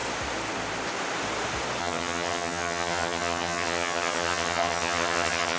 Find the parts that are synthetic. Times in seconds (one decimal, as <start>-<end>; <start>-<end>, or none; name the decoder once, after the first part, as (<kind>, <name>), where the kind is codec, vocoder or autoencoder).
1.8-5.6 (vocoder, HiFi-GAN)